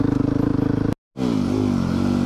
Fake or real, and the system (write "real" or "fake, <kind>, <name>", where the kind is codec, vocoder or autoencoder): real